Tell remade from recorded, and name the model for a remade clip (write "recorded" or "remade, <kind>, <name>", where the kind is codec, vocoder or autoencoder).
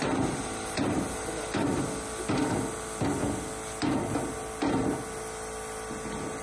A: recorded